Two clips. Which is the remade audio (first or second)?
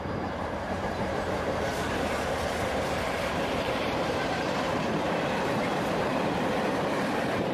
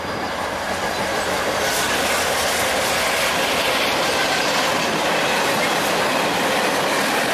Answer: first